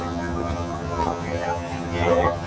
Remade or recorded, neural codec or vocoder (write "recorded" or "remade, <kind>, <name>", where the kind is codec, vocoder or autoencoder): remade, vocoder, HiFi-GAN